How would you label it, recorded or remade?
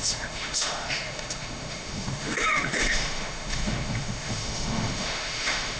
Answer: remade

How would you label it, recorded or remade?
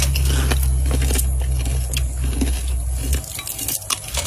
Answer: recorded